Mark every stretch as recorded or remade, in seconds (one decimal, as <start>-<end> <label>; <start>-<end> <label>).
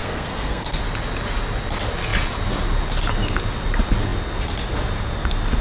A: 0.0-0.8 remade; 0.8-5.6 recorded